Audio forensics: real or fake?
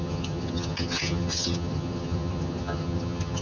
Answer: fake